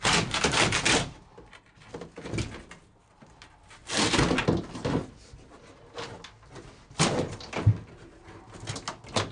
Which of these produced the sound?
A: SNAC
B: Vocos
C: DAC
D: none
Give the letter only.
D